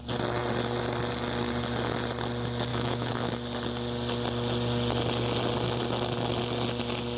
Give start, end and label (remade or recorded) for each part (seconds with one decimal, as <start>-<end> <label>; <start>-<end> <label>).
0.0-2.7 recorded; 2.7-3.3 remade; 3.3-7.2 recorded